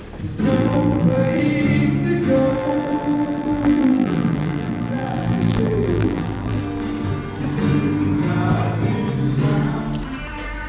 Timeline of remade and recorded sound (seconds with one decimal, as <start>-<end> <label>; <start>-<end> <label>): 0.0-0.5 recorded; 0.5-1.4 remade; 1.4-2.5 recorded; 2.5-6.6 remade; 6.6-10.7 recorded